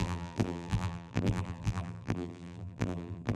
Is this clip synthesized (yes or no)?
yes